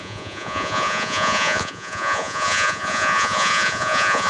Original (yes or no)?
no